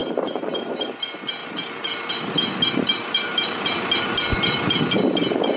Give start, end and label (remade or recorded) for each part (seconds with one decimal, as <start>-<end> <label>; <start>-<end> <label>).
0.0-0.9 remade; 0.9-1.4 recorded; 1.4-4.8 remade; 4.8-5.6 recorded